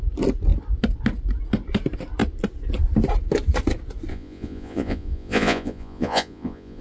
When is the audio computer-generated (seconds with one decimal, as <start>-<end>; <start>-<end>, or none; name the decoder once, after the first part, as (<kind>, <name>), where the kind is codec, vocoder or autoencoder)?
4.1-6.8 (vocoder, Vocos)